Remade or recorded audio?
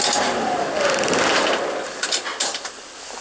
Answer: recorded